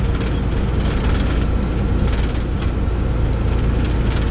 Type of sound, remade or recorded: recorded